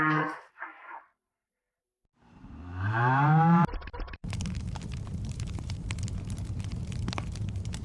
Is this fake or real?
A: fake